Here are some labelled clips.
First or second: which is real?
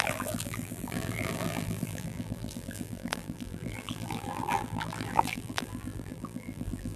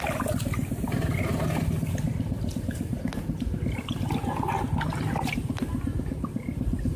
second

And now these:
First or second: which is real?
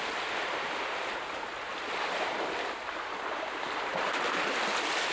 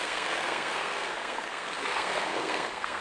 first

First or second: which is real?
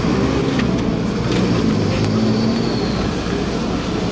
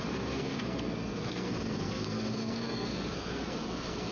first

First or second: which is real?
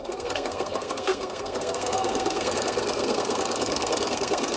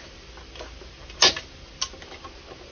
second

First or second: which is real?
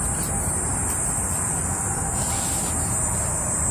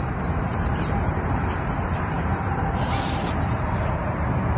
first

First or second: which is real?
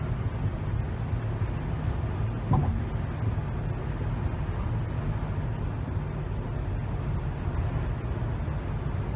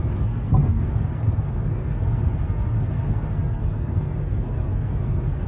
first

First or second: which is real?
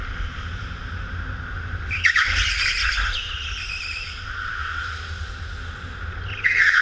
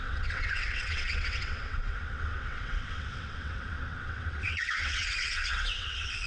first